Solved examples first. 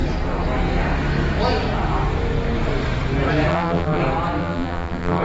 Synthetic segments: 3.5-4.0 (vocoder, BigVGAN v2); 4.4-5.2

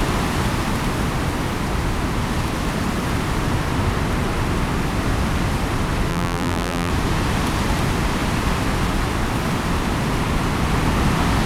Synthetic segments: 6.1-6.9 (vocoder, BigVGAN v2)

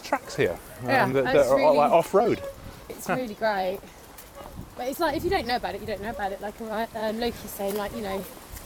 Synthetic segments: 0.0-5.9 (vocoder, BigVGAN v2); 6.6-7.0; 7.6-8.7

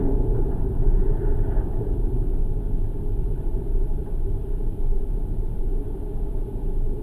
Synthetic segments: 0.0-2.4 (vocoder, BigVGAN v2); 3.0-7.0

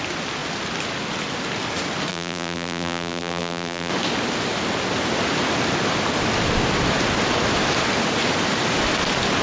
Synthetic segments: 2.1-3.9 (vocoder, BigVGAN v2)

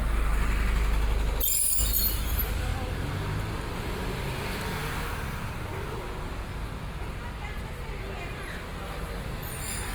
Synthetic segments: none

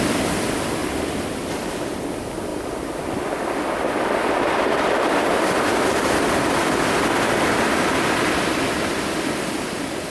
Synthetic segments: 0.8-1.8 (vocoder, BigVGAN v2); 2.5-5.3

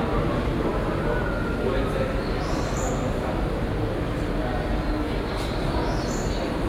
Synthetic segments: none